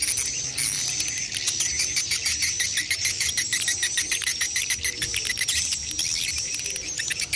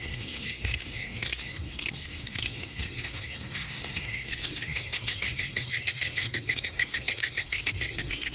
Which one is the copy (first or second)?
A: second